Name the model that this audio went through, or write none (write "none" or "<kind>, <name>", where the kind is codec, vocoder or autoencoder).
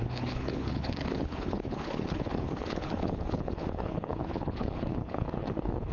codec, HILCodec